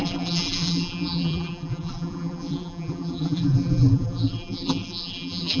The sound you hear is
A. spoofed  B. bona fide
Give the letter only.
A